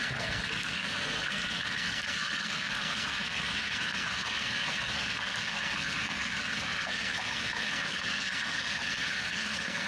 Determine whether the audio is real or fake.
fake